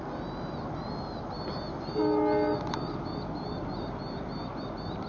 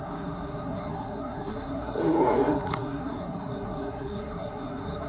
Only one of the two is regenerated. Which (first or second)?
second